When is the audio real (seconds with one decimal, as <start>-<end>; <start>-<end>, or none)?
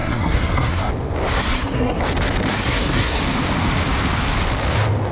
0.9-1.4; 2.0-2.5; 3.2-5.1